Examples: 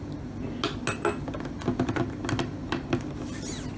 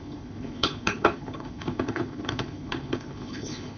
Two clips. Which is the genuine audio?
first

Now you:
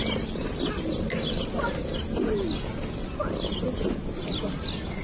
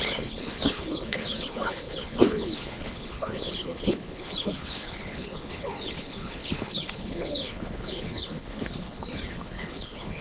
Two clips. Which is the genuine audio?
first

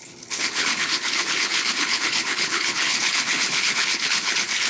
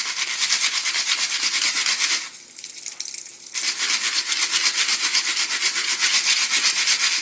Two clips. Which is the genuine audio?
second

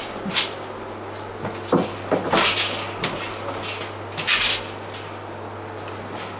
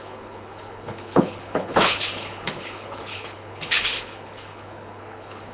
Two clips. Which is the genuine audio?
first